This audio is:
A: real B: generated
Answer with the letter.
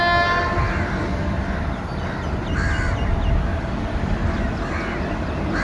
A